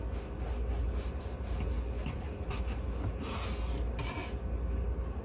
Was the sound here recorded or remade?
recorded